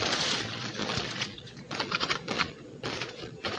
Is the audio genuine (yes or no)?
no